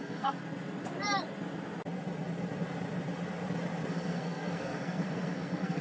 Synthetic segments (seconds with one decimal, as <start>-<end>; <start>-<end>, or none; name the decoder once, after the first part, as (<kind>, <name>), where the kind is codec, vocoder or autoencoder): 0.0-0.4 (codec, SNAC); 3.9-5.8